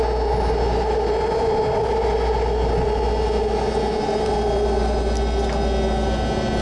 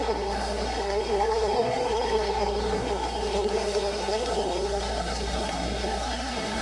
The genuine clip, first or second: first